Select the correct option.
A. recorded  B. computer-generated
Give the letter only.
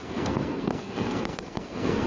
B